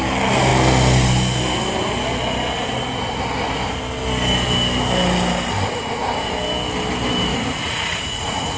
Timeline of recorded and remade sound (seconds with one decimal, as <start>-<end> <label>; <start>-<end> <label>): 0.0-7.3 recorded; 7.3-8.6 remade